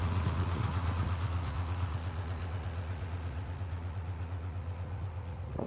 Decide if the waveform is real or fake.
fake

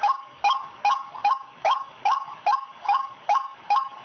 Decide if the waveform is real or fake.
fake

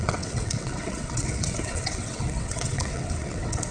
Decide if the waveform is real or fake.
fake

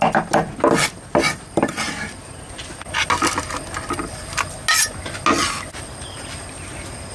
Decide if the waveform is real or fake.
real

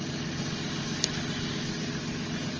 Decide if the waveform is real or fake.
real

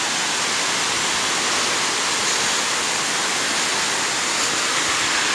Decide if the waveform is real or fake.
real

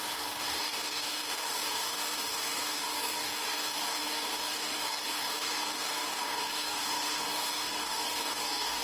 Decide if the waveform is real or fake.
fake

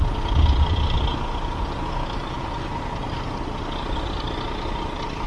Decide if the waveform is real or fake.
real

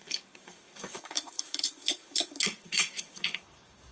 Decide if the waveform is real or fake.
fake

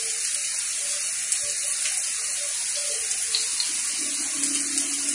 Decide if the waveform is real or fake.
real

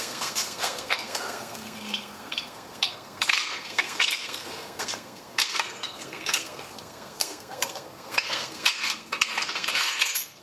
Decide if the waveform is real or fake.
fake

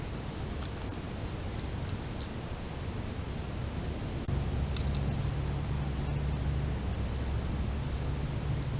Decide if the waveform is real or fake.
real